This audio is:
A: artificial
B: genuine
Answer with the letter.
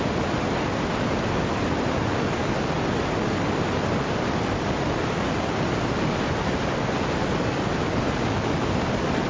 B